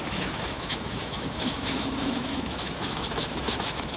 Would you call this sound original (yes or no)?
no